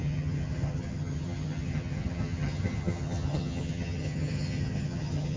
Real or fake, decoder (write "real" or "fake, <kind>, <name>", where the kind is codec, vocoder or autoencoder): fake, vocoder, HiFi-GAN